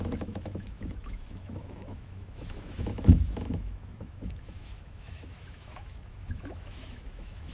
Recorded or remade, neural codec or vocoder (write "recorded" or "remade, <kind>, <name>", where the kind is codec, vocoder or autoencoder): remade, autoencoder, DAC-VAE